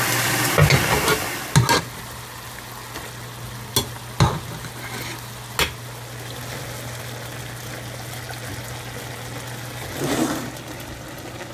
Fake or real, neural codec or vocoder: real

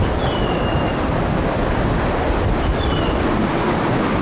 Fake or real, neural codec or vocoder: real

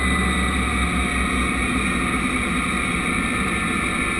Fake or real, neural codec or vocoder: real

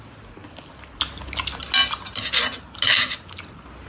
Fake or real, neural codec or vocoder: real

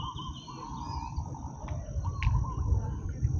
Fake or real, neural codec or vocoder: real